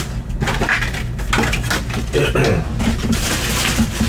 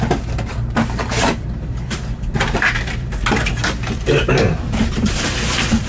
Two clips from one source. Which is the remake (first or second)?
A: second